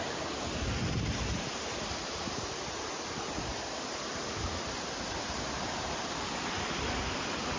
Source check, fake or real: real